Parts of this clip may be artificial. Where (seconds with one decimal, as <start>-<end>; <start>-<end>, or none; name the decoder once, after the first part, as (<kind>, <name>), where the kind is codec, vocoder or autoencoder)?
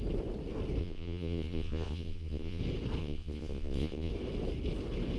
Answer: 0.8-2.6 (vocoder, Vocos); 3.0-4.1